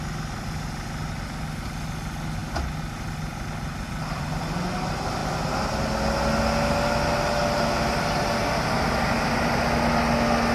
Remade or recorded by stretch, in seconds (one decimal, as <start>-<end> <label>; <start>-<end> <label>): 0.0-10.5 recorded